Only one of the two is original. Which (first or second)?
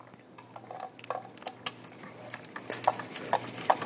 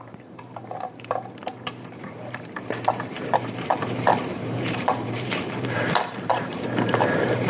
first